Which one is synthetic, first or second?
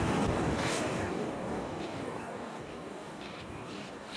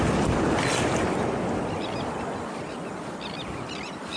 first